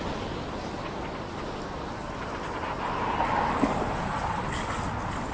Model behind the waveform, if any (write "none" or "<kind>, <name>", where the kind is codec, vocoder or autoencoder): none